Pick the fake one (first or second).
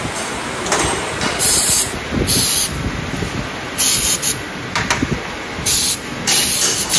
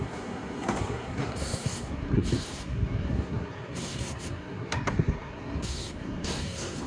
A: second